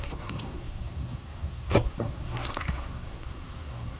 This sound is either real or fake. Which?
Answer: fake